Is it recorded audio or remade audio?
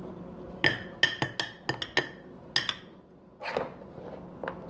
recorded